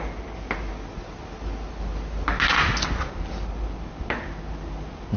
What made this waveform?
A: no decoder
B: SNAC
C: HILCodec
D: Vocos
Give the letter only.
A